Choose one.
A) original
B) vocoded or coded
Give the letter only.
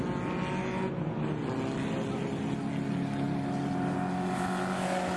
A